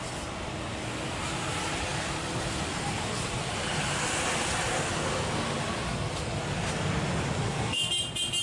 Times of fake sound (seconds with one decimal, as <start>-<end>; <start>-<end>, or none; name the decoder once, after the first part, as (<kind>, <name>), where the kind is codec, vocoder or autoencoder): 7.4-7.9 (codec, SNAC)